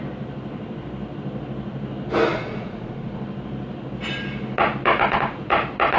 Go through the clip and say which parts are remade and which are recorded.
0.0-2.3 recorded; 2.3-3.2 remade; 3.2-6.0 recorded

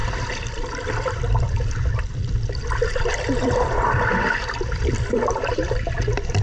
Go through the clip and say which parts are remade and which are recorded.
0.0-6.4 remade

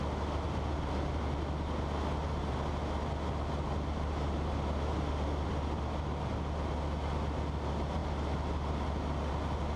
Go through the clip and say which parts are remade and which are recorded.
0.0-9.8 recorded